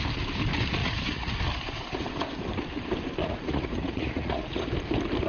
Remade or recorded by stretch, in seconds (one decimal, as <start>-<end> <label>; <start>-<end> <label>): 0.0-0.8 recorded; 0.8-1.4 remade; 1.4-3.2 recorded; 3.2-4.7 remade; 4.7-5.3 recorded